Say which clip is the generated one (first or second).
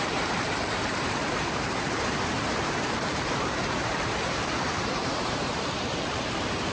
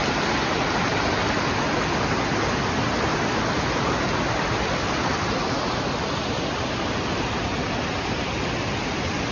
first